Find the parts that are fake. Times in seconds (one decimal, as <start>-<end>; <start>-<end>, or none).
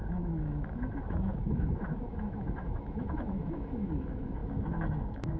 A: 0.0-5.4